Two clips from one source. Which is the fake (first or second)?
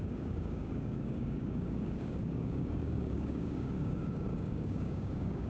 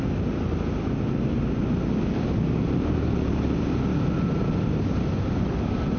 first